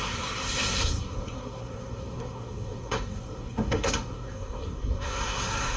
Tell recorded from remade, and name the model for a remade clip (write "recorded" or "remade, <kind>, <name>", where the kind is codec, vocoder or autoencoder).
remade, codec, SNAC